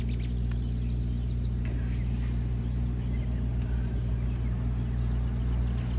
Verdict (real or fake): real